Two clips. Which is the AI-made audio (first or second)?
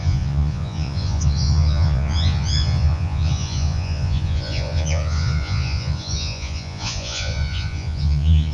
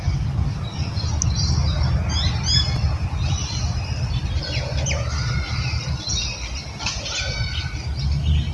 first